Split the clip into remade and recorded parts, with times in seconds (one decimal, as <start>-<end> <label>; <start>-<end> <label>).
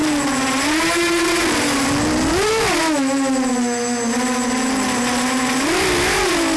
0.0-6.6 recorded